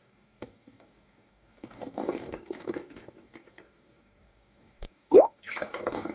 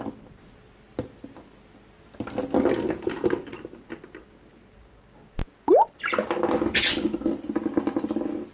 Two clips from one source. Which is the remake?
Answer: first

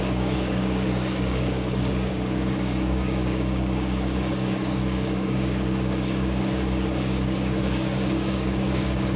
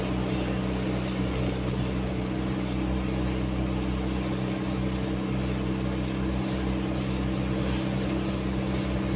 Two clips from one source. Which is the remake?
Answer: first